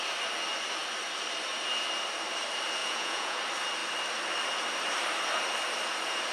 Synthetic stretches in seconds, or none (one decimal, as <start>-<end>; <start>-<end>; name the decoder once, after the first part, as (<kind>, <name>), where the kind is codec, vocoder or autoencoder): 2.8-3.4 (vocoder, Vocos)